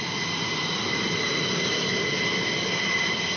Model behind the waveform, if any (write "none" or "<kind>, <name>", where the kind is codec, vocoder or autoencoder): none